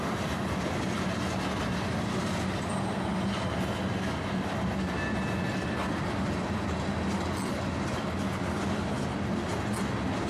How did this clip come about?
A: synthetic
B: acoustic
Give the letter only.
B